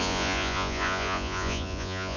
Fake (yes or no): yes